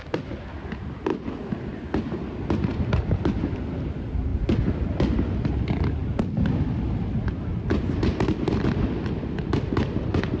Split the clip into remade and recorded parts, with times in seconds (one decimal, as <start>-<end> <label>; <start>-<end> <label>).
0.0-1.1 recorded; 1.1-3.5 remade; 3.5-10.4 recorded